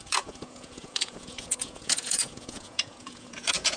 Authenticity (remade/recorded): remade